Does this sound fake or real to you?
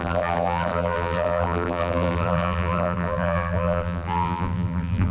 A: fake